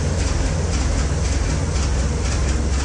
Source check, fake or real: real